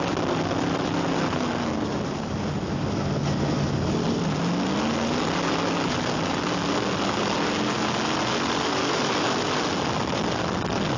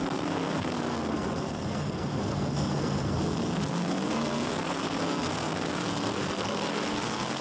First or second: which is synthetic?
second